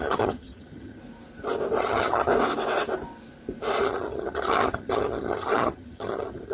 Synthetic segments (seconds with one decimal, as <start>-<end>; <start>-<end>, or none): 0.0-1.0; 1.8-2.3; 3.8-6.5